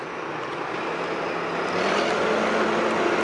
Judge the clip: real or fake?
real